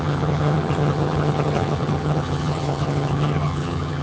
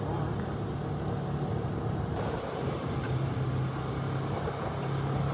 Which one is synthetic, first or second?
first